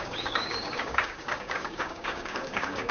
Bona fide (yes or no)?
no